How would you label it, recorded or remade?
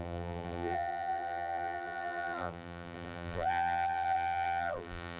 remade